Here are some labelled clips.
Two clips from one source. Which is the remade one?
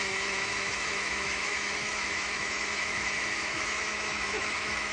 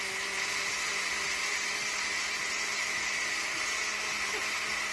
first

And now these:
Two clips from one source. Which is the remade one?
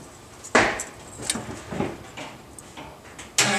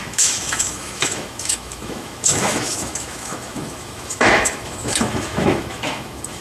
second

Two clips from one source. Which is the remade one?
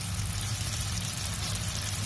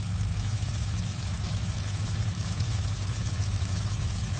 second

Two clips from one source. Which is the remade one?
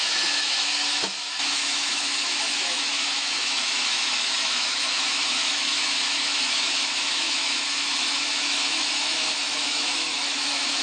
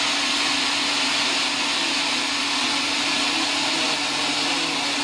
first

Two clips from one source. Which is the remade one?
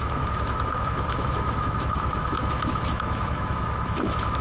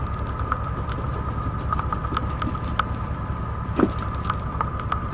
first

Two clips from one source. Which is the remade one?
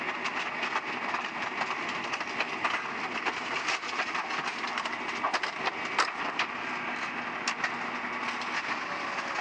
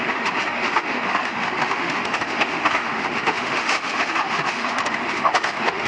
second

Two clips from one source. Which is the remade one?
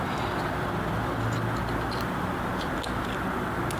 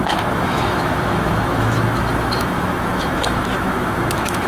second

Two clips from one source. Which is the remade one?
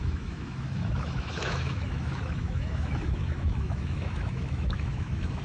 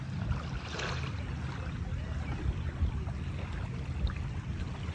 first